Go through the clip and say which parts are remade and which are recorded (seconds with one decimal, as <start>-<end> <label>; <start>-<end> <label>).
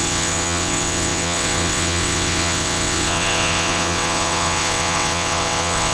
0.0-5.9 remade